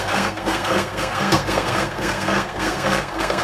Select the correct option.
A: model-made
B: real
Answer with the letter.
A